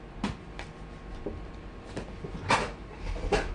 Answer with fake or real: real